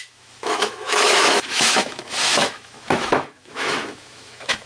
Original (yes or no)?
no